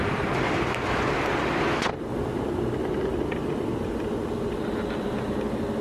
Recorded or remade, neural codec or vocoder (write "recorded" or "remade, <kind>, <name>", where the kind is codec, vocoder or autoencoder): recorded